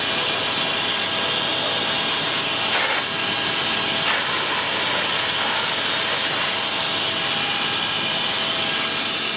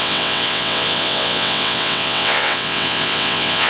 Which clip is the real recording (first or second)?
first